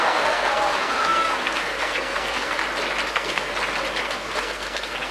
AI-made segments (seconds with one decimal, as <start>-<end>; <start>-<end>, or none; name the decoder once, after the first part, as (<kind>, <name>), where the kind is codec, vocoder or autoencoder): 0.0-2.6 (codec, SNAC); 3.1-3.5; 4.0-5.1